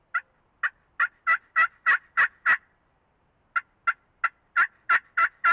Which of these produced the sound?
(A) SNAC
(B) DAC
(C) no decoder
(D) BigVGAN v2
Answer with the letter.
C